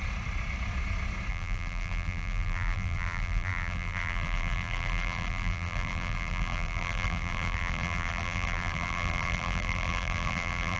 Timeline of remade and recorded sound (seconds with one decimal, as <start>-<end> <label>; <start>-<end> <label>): 0.0-1.3 recorded; 1.3-10.8 remade